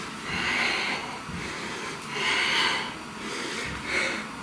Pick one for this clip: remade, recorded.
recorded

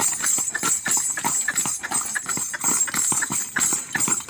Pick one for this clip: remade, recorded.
recorded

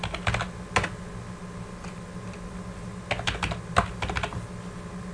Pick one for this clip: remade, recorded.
recorded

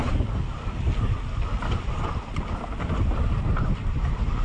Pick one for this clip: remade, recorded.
recorded